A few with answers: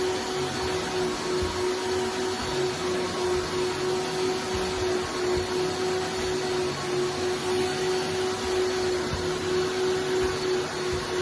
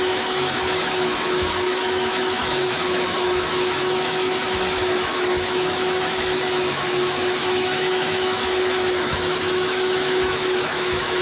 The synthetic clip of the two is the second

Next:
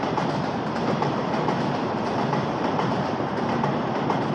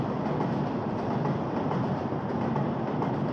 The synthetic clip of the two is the first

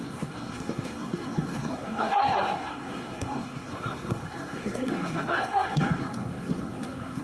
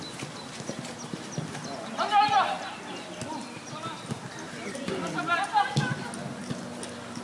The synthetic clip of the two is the first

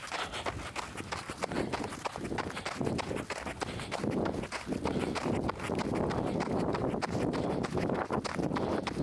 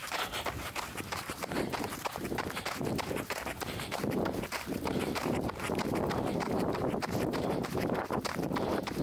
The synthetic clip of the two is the second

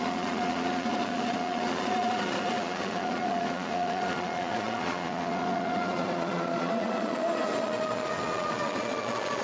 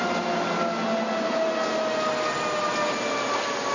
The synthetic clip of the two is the first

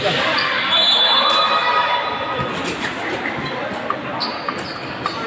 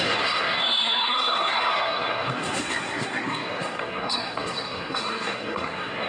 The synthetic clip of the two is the second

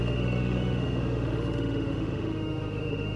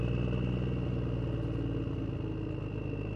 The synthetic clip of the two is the first